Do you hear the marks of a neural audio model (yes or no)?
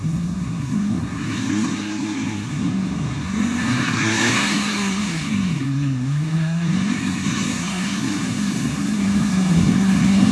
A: yes